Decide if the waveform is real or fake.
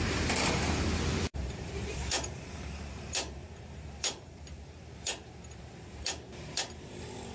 fake